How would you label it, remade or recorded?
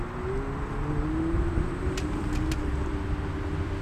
recorded